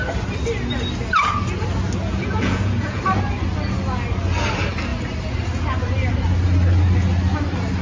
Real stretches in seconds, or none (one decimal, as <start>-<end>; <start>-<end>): 0.0-2.1; 3.0-7.8